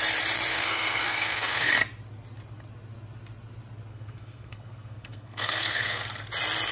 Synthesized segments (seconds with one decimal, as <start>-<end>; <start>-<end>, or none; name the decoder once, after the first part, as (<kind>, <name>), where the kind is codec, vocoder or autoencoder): 0.5-1.7 (codec, SNAC); 3.9-6.2